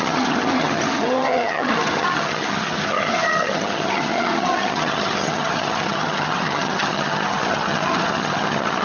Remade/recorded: remade